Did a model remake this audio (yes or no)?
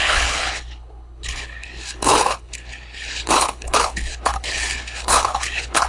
yes